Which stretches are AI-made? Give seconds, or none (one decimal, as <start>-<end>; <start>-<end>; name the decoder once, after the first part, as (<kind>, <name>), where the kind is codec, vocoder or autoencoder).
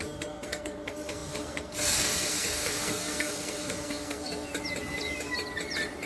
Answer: 0.0-4.5 (codec, SNAC)